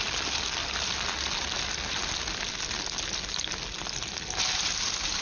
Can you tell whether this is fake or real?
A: real